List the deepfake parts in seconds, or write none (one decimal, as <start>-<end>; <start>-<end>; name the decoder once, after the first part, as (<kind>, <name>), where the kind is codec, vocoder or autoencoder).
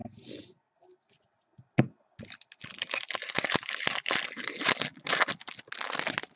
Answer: none